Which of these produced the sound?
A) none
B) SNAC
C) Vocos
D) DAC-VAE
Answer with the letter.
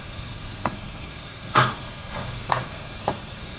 B